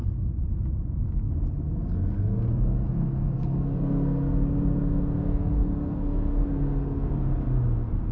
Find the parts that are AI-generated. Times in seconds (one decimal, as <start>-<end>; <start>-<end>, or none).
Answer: 2.8-7.1